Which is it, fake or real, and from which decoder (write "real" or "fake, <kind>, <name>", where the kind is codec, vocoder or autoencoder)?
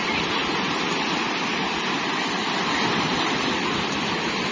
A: real